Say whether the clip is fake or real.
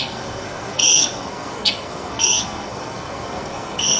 fake